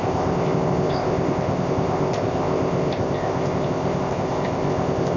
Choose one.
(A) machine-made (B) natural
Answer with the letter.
A